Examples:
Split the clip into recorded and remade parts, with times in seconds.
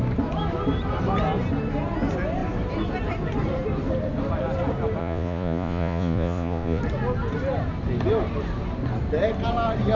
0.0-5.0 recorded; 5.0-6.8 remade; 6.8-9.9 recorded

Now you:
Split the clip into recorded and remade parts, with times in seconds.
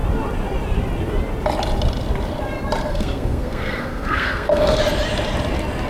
0.0-2.9 recorded; 2.9-4.8 remade; 4.8-5.9 recorded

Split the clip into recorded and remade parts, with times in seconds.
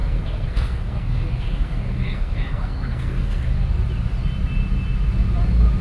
0.0-3.5 remade; 3.5-5.8 recorded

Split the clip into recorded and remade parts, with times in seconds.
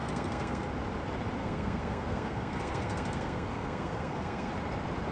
0.0-0.7 remade; 0.7-1.4 recorded; 1.4-4.5 remade; 4.5-5.1 recorded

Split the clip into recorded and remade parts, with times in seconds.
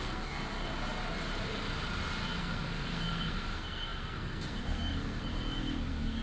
0.0-0.7 remade; 0.7-2.4 recorded; 2.4-6.2 remade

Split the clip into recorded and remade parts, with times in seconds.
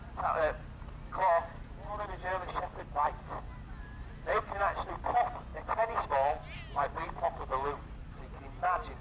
0.0-5.5 recorded; 5.5-6.1 remade; 6.1-9.0 recorded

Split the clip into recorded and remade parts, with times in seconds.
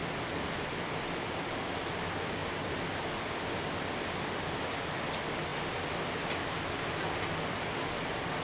0.0-8.4 recorded